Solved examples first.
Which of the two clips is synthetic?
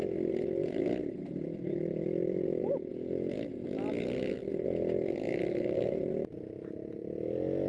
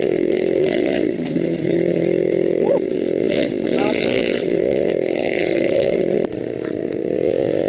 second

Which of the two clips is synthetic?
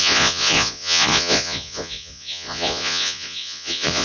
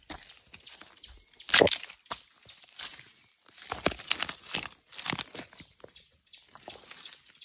first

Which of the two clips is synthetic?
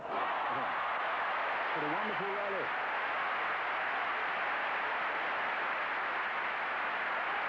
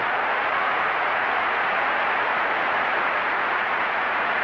second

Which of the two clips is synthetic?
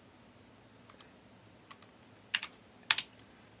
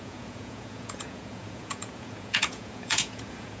second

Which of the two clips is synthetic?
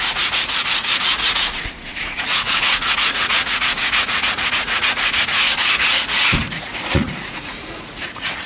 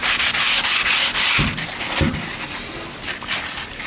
first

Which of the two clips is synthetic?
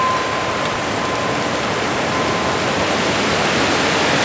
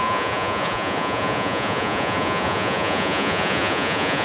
second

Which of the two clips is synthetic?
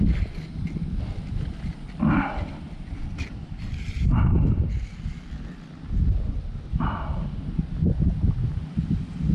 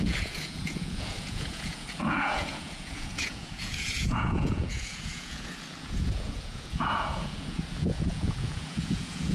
second